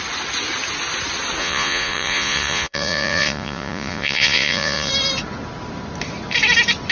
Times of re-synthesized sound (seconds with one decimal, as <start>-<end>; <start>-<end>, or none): 1.4-4.9